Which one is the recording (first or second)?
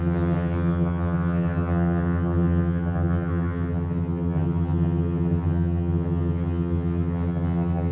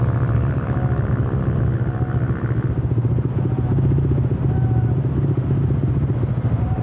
second